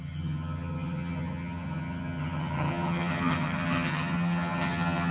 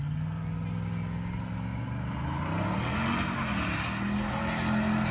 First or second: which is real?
second